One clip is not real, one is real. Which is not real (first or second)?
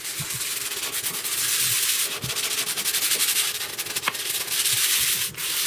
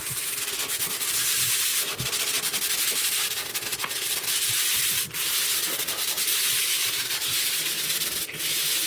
second